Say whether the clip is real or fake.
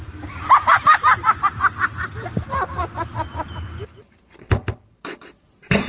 real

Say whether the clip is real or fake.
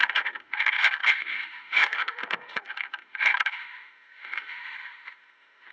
fake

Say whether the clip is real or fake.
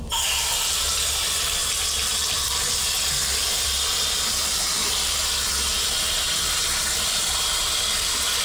fake